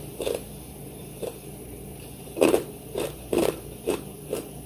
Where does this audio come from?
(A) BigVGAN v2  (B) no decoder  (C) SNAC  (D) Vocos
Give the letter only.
A